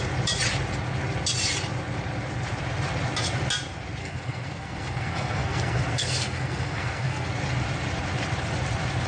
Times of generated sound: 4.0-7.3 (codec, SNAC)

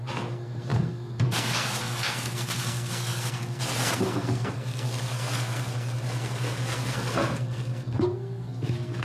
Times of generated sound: 0.0-9.0 (codec, SNAC)

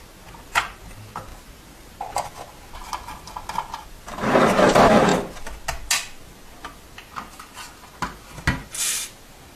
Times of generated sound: none

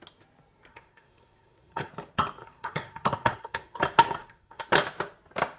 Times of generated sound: 0.7-1.9 (codec, SNAC); 2.4-3.8; 4.2-4.7

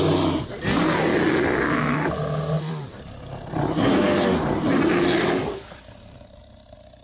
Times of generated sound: none